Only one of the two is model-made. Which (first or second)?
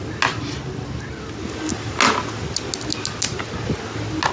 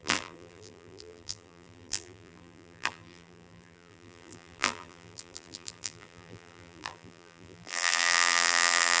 second